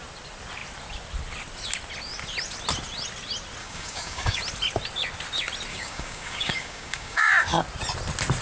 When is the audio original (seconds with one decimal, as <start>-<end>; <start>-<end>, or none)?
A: 0.0-3.6; 4.4-5.7; 7.3-8.4

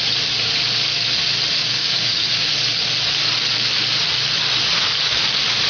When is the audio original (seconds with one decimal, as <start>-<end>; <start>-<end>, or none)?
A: 0.0-1.6; 2.5-5.7

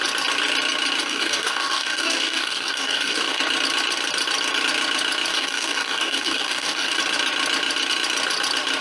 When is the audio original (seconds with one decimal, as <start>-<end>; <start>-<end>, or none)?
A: 0.0-1.0; 3.4-5.3; 7.0-8.8

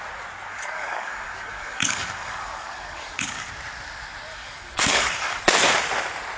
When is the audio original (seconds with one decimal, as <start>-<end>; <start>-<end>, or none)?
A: 0.0-0.5; 3.5-4.3; 5.4-6.4

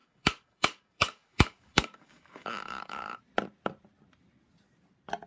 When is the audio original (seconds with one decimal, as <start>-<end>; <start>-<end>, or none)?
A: 3.2-5.3

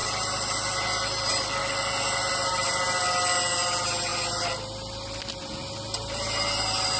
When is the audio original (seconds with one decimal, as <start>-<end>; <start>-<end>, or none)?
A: 0.0-7.0